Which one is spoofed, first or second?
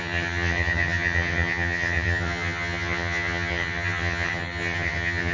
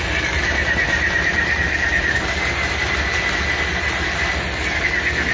first